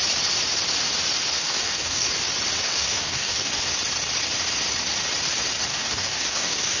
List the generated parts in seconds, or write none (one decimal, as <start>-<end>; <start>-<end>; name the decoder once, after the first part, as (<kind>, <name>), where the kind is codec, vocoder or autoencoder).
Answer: 1.4-2.1 (codec, DAC); 2.6-3.6; 5.7-6.8